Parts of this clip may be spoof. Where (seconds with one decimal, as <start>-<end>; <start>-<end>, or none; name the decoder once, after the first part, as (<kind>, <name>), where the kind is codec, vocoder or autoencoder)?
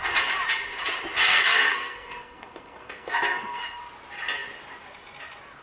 1.3-3.8 (codec, SNAC)